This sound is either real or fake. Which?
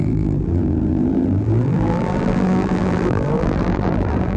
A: fake